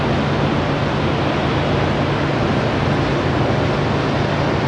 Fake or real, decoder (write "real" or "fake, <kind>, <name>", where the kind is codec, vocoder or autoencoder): real